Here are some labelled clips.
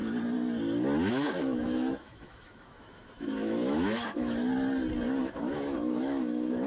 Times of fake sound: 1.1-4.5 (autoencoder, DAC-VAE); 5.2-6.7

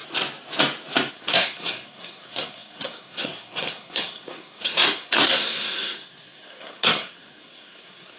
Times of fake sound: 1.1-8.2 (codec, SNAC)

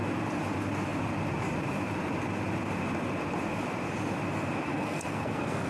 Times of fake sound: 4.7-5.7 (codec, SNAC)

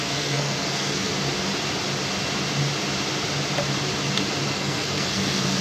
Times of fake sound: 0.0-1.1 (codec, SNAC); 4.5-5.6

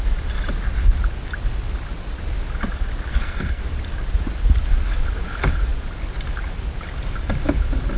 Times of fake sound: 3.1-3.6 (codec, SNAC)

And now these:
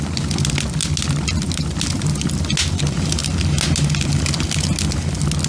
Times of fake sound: none